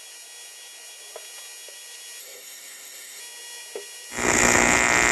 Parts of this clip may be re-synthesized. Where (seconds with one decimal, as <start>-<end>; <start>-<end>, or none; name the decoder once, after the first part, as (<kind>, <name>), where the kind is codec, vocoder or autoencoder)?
2.2-3.2 (codec, SNAC)